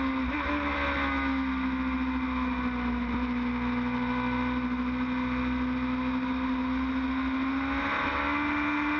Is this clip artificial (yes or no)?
no